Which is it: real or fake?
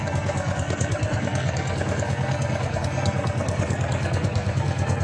fake